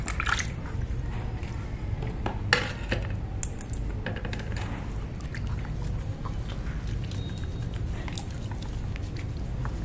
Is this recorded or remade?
recorded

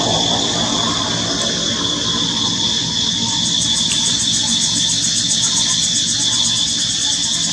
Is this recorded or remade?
recorded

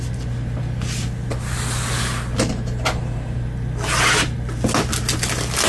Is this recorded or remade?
recorded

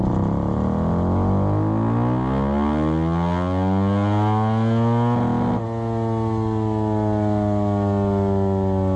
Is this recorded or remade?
recorded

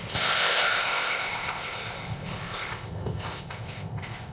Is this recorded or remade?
remade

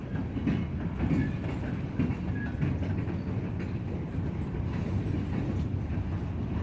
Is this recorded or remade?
recorded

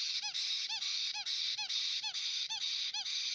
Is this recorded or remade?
recorded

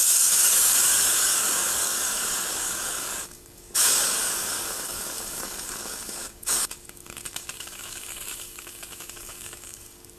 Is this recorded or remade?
remade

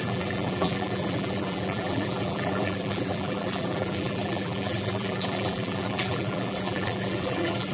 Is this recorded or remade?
remade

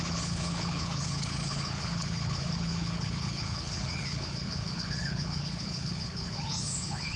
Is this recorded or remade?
remade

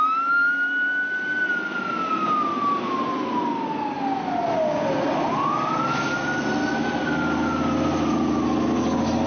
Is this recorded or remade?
recorded